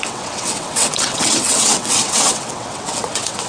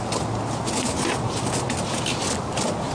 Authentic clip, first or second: second